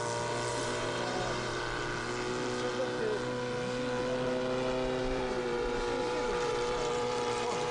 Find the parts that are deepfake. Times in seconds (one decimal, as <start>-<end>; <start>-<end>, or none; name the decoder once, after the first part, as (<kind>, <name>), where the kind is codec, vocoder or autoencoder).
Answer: 0.5-1.6 (vocoder, BigVGAN v2); 5.0-7.7